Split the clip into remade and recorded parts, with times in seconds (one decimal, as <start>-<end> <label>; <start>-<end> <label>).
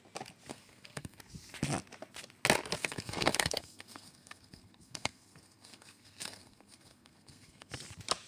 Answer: 0.0-0.5 recorded; 0.5-1.2 remade; 1.2-2.8 recorded; 2.8-7.7 remade; 7.7-8.3 recorded